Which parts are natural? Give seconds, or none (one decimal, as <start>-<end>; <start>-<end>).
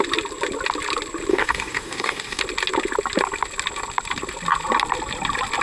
0.0-1.3; 2.4-5.6